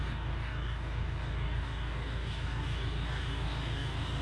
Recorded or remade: remade